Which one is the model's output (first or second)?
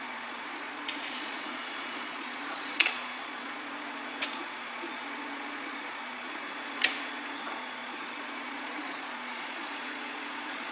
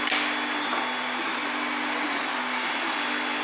first